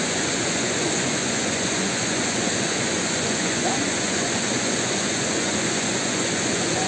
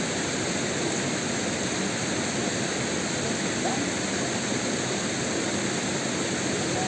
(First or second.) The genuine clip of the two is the second